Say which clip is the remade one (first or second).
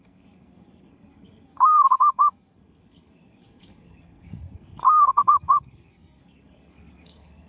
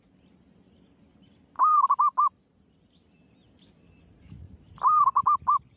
first